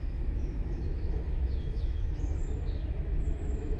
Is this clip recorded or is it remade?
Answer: remade